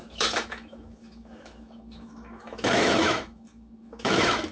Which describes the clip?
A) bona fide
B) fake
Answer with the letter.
B